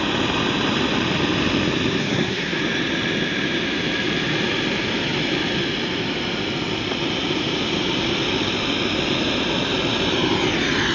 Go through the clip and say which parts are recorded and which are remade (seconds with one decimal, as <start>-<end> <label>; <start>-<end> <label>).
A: 0.0-2.0 recorded; 2.0-2.6 remade; 2.6-10.9 recorded